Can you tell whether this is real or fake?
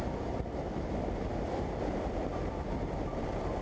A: fake